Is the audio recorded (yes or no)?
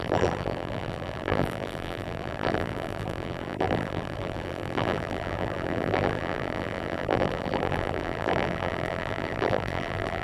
no